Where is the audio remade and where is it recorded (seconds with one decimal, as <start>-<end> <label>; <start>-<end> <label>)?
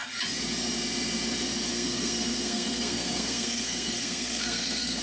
0.0-1.7 recorded; 1.7-5.0 remade